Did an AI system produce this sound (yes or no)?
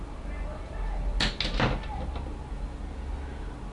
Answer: no